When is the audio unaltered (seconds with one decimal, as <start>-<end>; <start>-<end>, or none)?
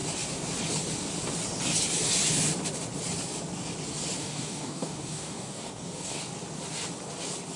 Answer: 0.0-4.2; 6.2-7.6